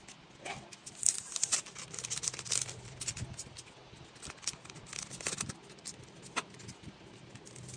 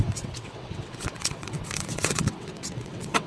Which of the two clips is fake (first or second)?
second